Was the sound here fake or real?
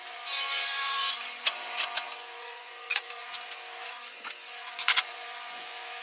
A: fake